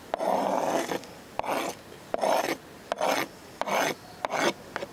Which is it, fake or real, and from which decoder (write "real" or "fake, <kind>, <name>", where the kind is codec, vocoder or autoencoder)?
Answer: real